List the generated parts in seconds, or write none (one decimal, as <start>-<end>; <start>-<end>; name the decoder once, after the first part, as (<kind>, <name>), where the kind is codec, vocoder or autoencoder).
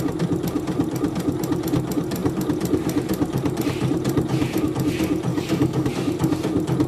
5.3-5.9 (codec, DAC)